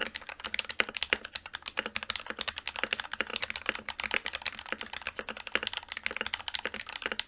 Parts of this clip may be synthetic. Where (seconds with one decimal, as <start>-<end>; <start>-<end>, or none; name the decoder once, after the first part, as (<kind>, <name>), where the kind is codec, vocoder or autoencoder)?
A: 0.0-1.0 (codec, DAC)